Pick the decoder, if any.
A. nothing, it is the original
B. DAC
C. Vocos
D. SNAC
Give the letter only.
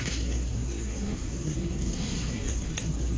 D